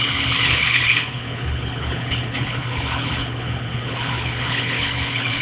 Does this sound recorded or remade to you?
remade